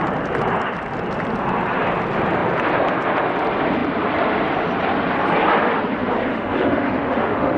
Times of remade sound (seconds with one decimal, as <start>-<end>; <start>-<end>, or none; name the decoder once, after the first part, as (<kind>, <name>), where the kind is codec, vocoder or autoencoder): 6.3-7.6 (autoencoder, DAC-VAE)